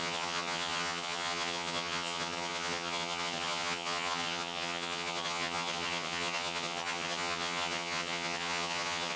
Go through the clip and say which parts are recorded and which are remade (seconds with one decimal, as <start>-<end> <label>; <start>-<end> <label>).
0.0-9.2 remade